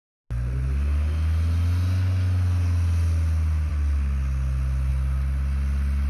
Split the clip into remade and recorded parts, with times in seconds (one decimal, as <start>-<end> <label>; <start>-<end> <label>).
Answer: 0.0-6.1 recorded